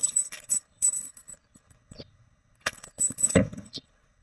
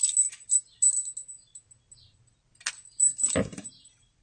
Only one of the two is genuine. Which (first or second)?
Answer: second